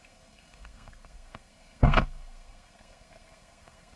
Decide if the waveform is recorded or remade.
remade